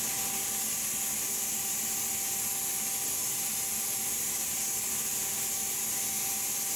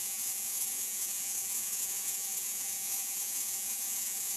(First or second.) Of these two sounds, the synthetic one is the second